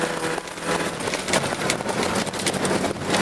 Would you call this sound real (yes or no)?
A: yes